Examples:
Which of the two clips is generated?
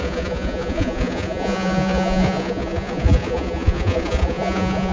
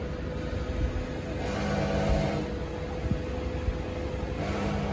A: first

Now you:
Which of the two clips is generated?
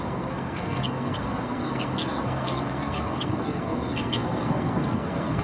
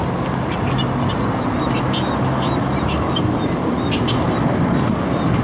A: first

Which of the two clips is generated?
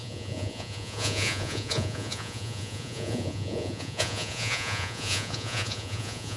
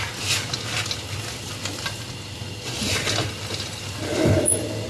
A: first